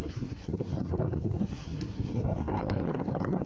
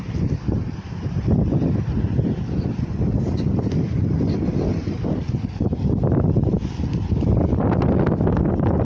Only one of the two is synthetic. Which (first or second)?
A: first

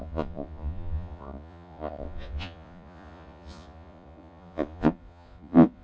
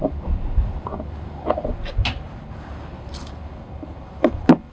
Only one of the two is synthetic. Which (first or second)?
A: first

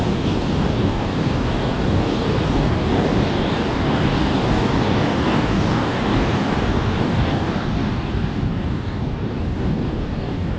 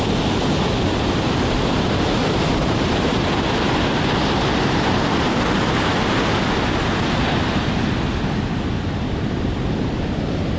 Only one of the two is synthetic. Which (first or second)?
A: first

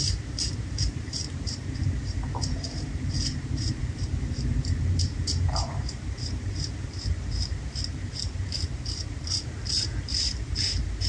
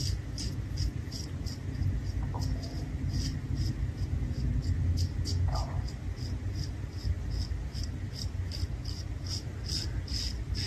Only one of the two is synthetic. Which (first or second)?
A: first